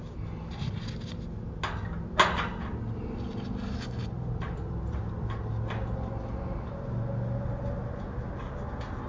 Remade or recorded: recorded